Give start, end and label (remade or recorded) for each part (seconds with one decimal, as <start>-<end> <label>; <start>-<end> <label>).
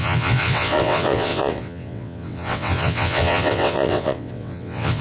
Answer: 0.0-5.0 remade